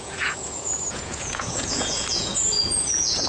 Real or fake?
fake